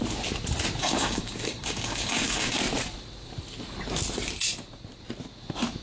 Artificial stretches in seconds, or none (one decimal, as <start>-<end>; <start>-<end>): 0.8-2.6